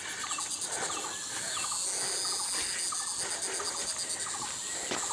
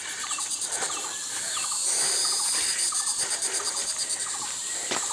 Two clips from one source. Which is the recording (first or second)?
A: first